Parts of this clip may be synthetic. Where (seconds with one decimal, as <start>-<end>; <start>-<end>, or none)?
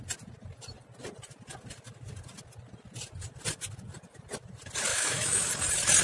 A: 4.9-5.5